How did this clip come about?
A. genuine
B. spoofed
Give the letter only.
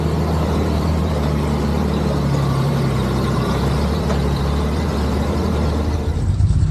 B